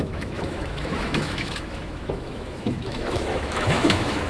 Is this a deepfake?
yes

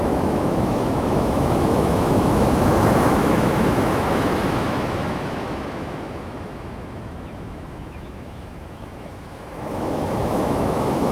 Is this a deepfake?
yes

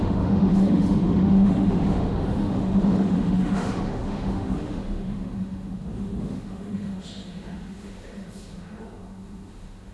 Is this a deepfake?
yes